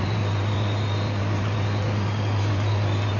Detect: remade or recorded recorded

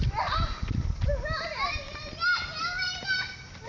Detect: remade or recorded recorded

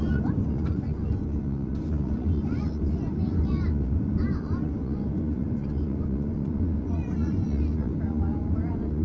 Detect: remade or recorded remade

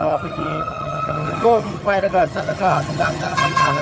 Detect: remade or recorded remade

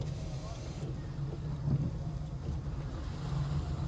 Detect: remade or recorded recorded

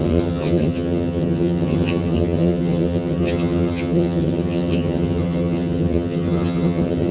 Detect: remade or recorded remade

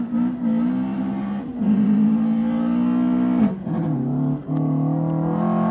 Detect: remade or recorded recorded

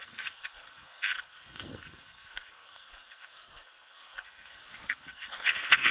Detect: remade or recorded remade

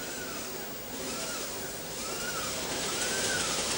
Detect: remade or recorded remade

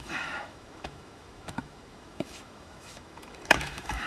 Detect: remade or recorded remade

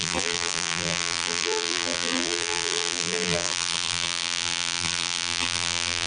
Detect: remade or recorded remade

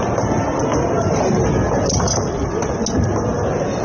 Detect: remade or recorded recorded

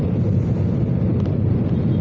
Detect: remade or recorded recorded